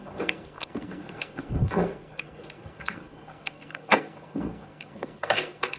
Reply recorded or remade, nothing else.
remade